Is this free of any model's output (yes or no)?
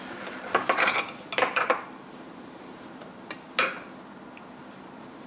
yes